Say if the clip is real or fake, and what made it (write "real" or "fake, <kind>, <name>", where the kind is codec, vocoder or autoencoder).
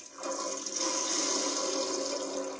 real